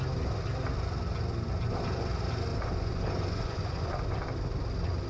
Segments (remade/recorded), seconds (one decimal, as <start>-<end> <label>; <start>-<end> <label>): 0.0-2.5 recorded; 2.5-3.9 remade; 3.9-5.1 recorded